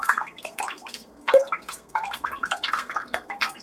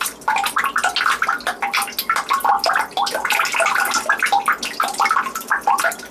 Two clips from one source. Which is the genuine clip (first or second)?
second